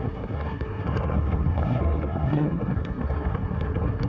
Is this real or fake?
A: fake